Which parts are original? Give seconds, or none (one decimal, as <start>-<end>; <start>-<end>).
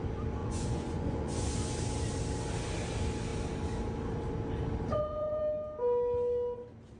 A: 0.0-0.4; 1.5-4.9; 5.4-7.0